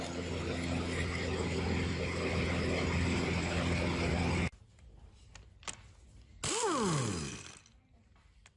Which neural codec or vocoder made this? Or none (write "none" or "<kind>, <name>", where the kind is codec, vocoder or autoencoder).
none